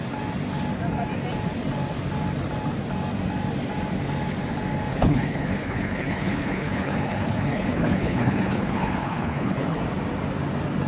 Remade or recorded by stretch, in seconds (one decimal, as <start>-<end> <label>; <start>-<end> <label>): 0.0-4.9 recorded; 4.9-9.8 remade; 9.8-10.9 recorded